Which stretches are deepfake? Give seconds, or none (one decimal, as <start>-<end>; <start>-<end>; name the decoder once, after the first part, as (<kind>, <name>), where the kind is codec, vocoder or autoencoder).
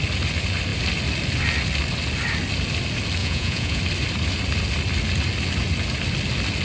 3.2-3.8 (vocoder, Vocos)